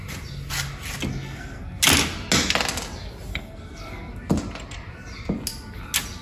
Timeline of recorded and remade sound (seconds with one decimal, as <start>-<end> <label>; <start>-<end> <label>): 0.0-1.1 recorded; 1.1-1.8 remade; 1.8-3.3 recorded; 3.3-4.1 remade; 4.1-6.2 recorded